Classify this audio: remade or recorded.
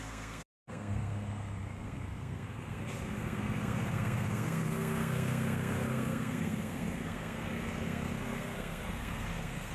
remade